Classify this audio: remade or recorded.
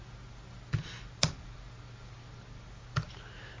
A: recorded